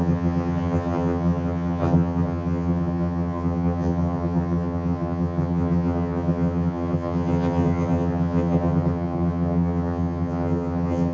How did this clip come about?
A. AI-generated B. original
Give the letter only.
A